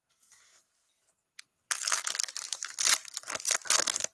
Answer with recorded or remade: recorded